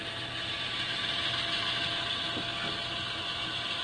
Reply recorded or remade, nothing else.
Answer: recorded